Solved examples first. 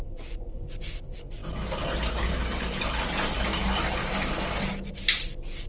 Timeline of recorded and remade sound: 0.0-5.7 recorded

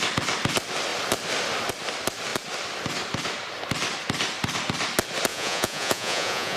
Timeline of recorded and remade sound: 0.0-5.3 recorded; 5.3-6.6 remade

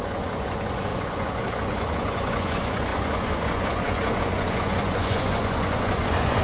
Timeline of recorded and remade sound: 0.0-6.4 remade

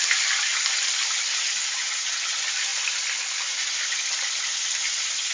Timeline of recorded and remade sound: 0.0-5.3 recorded